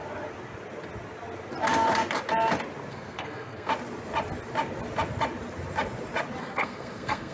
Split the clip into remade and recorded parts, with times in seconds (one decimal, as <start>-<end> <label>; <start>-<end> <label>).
0.0-2.9 recorded; 2.9-3.7 remade; 3.7-6.4 recorded; 6.4-7.3 remade